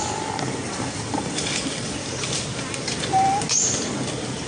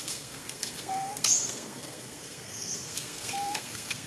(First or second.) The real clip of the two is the first